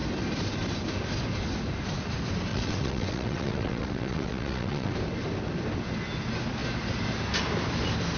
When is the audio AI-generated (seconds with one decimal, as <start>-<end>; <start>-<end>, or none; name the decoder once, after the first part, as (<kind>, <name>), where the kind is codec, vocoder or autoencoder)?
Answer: 2.5-4.9 (vocoder, WaveNeXt)

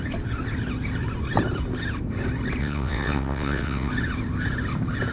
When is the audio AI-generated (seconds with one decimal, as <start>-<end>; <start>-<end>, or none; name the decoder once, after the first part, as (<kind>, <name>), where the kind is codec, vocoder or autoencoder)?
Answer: 2.6-3.9 (vocoder, WaveNeXt)

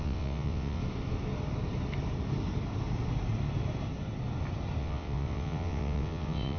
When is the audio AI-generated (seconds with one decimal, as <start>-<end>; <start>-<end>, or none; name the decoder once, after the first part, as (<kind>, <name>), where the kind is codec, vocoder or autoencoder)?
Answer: 0.0-0.8 (vocoder, WaveNeXt); 4.8-6.6

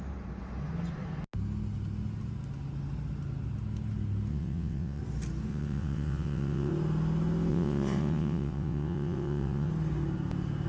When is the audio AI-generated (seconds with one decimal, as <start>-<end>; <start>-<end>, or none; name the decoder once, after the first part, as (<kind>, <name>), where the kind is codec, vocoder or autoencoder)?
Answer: 4.3-5.0 (vocoder, WaveNeXt); 5.5-6.7; 7.5-9.7

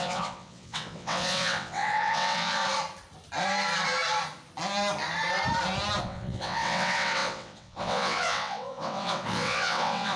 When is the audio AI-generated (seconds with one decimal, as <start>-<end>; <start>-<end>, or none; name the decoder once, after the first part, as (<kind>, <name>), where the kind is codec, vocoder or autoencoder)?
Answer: 0.0-2.6 (vocoder, WaveNeXt); 6.0-10.2

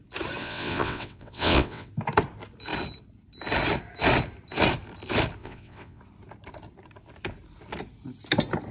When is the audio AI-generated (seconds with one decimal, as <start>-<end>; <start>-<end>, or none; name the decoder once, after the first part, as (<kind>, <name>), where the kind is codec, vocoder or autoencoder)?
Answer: 0.4-1.9 (vocoder, WaveNeXt); 5.4-6.0

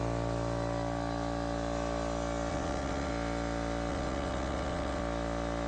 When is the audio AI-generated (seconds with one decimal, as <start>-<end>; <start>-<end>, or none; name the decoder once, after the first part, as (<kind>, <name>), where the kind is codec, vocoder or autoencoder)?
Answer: 2.5-3.1 (vocoder, WaveNeXt); 3.9-5.0

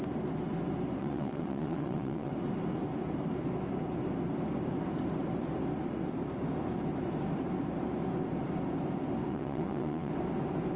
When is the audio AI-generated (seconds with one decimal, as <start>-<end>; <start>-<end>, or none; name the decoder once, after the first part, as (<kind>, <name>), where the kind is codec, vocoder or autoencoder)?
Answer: 1.0-2.3 (vocoder, WaveNeXt); 9.3-10.1